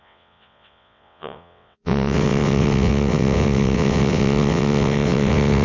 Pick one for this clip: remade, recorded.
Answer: remade